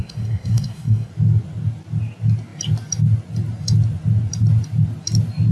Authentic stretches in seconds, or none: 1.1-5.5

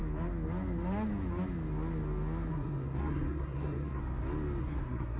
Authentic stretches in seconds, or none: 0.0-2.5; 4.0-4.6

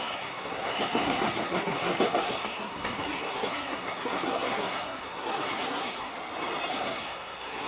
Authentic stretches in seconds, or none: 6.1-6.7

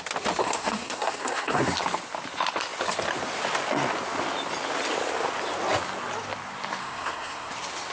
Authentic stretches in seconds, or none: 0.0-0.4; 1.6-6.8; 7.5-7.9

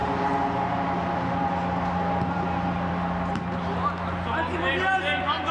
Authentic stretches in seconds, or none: 0.0-5.5

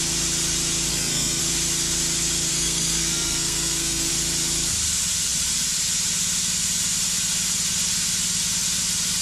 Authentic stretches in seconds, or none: 0.0-0.9; 1.4-2.5; 4.1-9.2